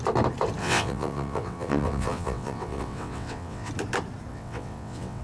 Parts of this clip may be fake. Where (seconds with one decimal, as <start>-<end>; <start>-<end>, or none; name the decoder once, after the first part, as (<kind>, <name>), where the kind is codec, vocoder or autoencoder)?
0.6-3.7 (vocoder, WaveNeXt); 4.3-5.2